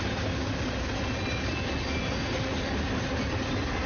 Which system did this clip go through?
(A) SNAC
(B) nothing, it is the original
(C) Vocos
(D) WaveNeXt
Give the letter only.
B